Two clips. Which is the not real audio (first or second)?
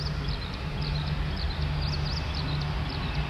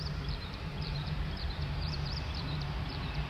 second